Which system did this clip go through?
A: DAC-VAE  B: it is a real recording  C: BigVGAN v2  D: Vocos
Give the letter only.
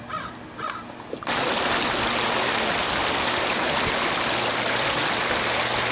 B